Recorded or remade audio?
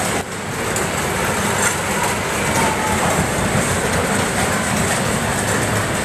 recorded